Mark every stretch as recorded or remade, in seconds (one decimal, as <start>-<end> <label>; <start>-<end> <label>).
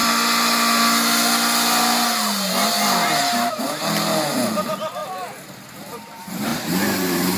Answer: 0.0-3.5 recorded; 3.5-5.0 remade; 5.0-5.7 recorded; 5.7-7.4 remade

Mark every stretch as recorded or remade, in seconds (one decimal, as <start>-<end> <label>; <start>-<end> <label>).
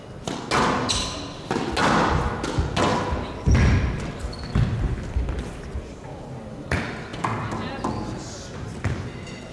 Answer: 0.0-9.5 recorded